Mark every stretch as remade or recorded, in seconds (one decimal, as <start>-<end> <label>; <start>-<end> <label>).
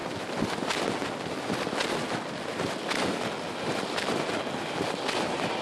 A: 0.0-5.6 recorded